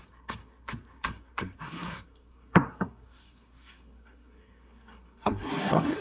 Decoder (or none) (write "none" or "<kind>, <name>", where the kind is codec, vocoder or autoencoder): codec, SNAC